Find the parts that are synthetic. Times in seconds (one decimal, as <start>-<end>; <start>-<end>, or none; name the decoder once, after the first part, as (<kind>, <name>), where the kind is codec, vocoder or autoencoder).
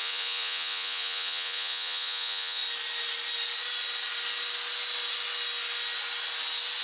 0.0-2.6 (vocoder, Vocos)